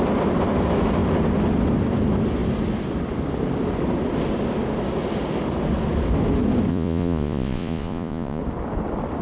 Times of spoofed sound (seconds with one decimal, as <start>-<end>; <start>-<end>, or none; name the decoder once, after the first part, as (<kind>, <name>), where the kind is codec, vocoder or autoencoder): 6.7-8.4 (vocoder, Vocos)

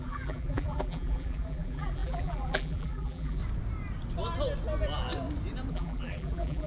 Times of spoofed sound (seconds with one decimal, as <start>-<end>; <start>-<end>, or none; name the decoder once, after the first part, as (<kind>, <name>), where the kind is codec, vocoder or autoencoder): 0.0-3.4 (vocoder, BigVGAN v2); 5.7-6.7

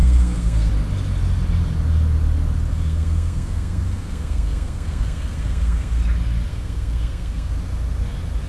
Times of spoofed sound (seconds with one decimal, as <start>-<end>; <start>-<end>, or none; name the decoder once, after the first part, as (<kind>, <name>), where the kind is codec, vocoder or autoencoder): 0.0-0.7 (codec, SNAC); 2.7-6.0; 6.5-7.5

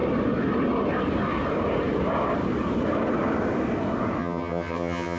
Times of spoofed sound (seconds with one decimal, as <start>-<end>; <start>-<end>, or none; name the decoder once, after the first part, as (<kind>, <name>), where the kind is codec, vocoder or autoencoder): 4.2-5.2 (vocoder, HiFi-GAN)

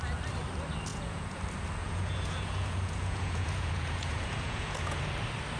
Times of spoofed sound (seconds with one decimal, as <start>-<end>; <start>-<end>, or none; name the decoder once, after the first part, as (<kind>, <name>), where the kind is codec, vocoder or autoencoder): 0.9-1.4 (vocoder, Vocos); 1.8-5.0

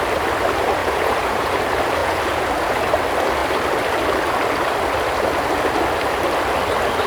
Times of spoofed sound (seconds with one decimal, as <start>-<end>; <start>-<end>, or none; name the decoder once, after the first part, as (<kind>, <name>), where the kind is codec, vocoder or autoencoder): 0.8-1.6 (vocoder, Vocos); 2.0-2.8

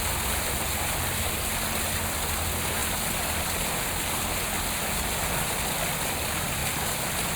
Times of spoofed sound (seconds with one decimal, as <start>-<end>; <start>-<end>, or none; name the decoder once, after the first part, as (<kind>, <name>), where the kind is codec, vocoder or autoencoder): none